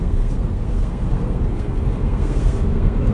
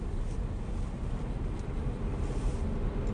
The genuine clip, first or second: second